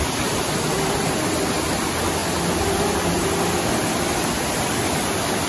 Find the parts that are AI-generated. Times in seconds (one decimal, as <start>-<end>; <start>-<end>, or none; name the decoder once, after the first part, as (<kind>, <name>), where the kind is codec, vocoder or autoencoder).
0.0-2.2 (vocoder, BigVGAN v2); 3.1-5.5

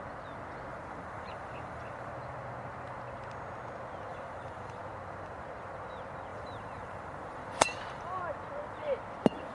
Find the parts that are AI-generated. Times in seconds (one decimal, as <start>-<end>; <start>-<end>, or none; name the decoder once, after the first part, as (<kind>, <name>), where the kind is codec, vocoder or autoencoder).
0.7-2.1 (vocoder, BigVGAN v2); 4.1-4.8; 6.3-8.2